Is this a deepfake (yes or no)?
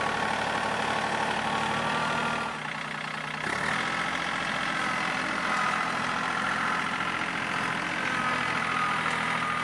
no